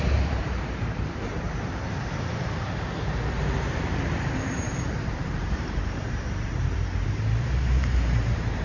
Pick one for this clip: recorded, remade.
remade